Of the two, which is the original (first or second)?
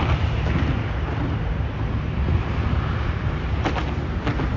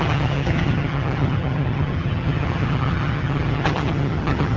first